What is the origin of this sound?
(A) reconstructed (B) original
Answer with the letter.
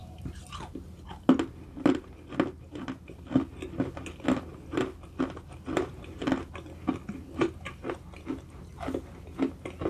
B